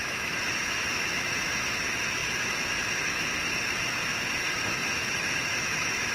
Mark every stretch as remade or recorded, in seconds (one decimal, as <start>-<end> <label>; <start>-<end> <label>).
0.0-6.1 remade